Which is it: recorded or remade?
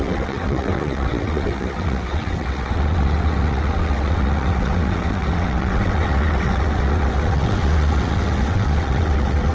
remade